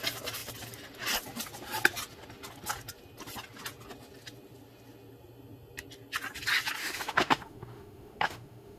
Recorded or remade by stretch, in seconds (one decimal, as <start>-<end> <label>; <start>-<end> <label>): 0.0-6.8 recorded; 6.8-8.8 remade